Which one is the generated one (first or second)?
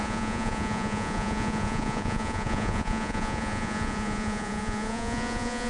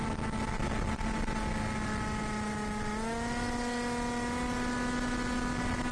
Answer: first